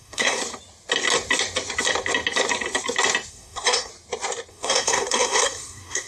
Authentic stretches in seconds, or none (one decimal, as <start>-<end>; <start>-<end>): 0.4-3.3; 3.9-4.5